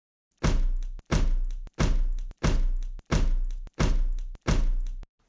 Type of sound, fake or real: real